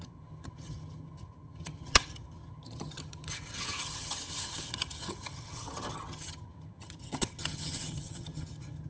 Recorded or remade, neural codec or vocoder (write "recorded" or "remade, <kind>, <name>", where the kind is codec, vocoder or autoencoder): remade, vocoder, HiFi-GAN